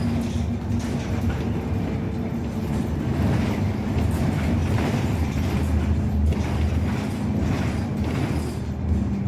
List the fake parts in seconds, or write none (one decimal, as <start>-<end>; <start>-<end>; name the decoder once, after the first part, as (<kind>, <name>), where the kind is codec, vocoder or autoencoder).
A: none